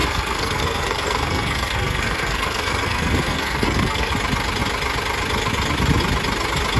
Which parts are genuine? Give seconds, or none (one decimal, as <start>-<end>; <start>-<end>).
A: 4.1-6.8